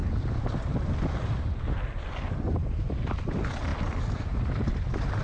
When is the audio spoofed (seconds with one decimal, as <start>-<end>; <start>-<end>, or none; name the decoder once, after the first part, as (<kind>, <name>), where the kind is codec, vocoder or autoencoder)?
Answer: none